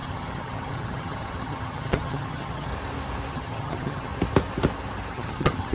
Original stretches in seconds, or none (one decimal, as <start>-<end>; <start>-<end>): 2.7-3.3; 4.1-5.1